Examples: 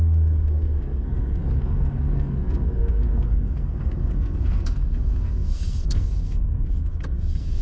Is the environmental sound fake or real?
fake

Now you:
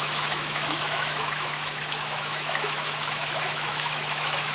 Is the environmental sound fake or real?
fake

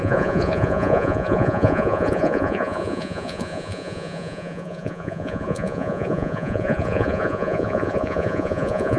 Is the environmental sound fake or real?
fake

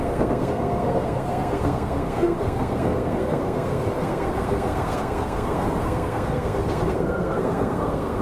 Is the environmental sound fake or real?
fake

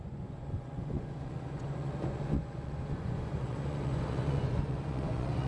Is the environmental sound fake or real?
fake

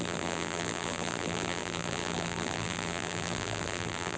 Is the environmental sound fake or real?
fake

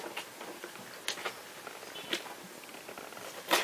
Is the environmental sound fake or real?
real